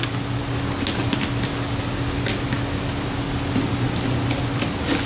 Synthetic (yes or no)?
no